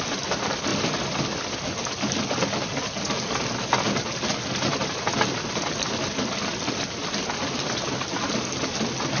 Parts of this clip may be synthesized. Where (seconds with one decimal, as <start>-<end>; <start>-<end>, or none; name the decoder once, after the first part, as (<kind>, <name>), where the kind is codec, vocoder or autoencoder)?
none